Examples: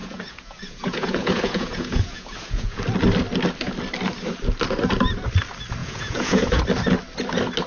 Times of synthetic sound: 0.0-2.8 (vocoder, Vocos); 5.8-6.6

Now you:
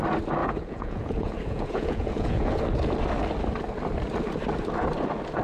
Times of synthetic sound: 0.4-2.5 (vocoder, Vocos)

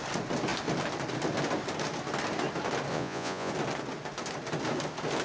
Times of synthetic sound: 2.9-3.5 (vocoder, Vocos)

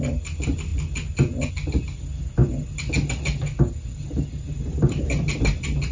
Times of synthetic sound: none

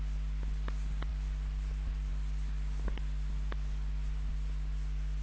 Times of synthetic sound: none